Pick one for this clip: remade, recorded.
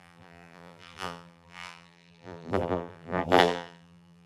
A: remade